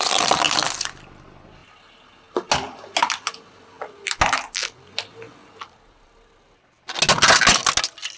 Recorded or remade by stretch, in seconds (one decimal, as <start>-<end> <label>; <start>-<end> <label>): 0.0-8.2 recorded